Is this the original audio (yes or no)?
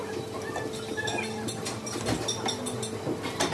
yes